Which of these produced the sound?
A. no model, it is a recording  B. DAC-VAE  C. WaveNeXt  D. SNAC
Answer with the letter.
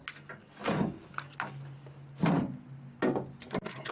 A